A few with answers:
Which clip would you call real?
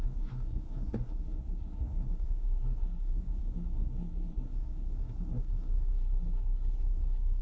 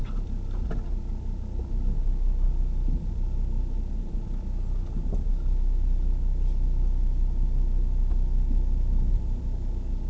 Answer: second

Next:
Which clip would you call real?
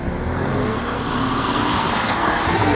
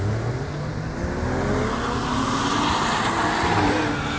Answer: second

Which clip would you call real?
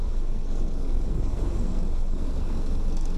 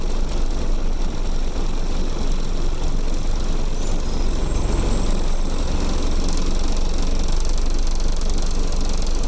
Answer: second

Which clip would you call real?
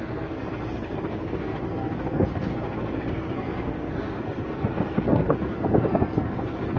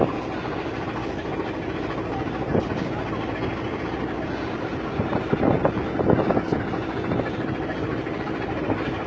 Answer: second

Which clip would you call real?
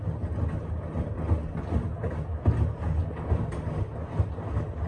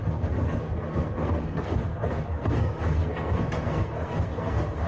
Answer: first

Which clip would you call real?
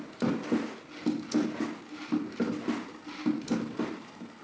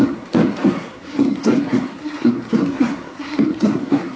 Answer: first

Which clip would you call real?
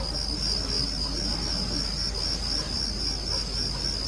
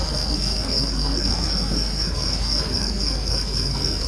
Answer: first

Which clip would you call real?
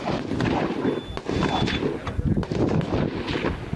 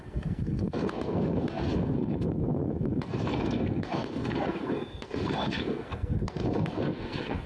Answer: first